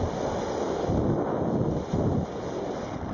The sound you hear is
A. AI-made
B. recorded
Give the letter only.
A